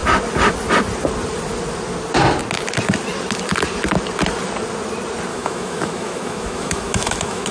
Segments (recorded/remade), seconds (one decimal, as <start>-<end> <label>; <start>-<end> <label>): 0.0-5.3 recorded; 5.3-7.5 remade

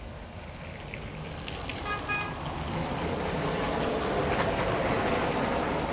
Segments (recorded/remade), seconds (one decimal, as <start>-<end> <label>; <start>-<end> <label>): 0.0-5.9 recorded

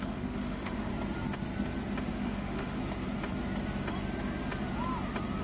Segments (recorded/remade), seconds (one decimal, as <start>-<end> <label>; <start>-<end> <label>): 0.0-0.9 remade; 0.9-2.2 recorded; 2.2-2.8 remade; 2.8-5.4 recorded

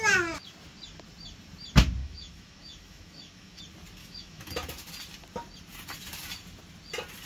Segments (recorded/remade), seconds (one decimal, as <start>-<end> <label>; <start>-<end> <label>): 0.0-2.0 recorded; 2.0-3.6 remade; 3.6-4.0 recorded; 4.0-4.5 remade; 4.5-7.3 recorded